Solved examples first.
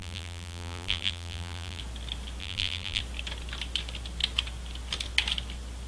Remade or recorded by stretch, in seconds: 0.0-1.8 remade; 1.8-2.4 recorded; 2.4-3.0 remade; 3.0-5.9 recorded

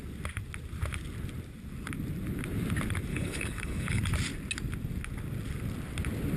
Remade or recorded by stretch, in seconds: 0.0-3.1 recorded; 3.1-4.0 remade; 4.0-6.4 recorded